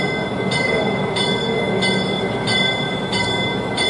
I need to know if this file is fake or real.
real